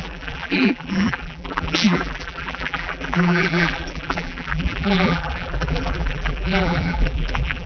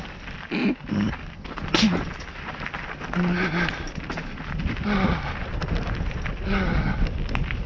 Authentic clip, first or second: second